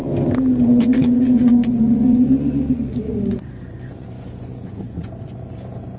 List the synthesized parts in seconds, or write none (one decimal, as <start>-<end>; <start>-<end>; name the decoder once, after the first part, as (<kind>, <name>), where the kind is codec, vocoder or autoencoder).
0.8-6.0 (vocoder, Vocos)

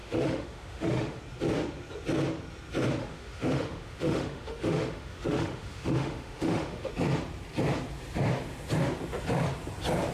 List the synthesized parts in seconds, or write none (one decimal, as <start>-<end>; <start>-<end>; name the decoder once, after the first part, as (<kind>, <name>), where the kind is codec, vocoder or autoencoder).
0.0-1.2 (autoencoder, DAC-VAE); 3.0-6.9